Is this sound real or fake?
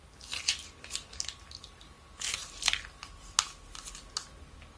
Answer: real